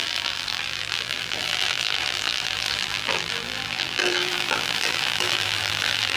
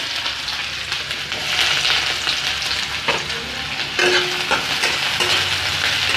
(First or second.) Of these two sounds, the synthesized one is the first